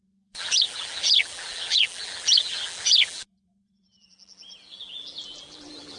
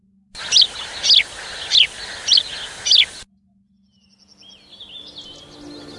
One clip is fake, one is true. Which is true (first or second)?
second